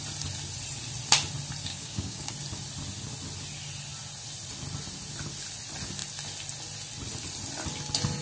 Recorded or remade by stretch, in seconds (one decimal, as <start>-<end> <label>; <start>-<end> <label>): 0.0-1.7 recorded; 1.7-2.3 remade; 2.3-8.2 recorded